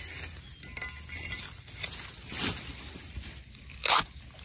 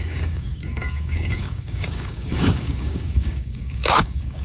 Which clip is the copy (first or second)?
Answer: second